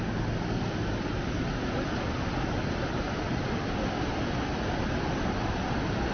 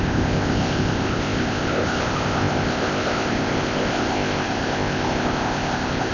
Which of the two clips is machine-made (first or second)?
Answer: second